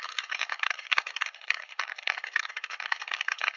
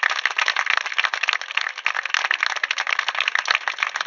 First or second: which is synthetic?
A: first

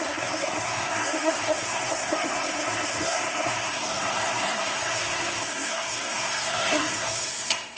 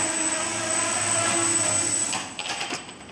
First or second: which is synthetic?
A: first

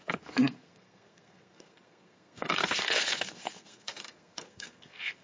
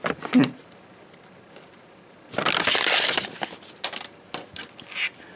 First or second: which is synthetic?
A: first